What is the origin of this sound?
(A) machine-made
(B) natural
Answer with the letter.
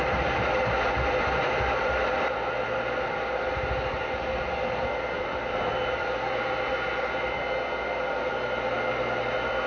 B